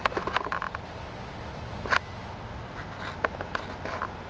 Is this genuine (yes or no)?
yes